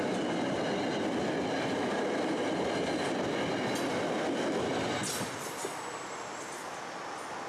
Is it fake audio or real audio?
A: real